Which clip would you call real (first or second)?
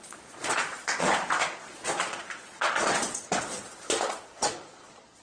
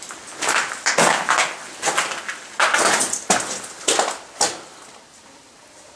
second